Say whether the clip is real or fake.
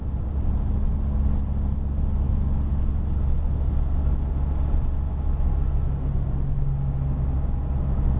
real